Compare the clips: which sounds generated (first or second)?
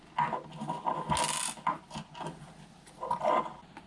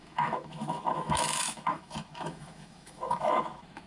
second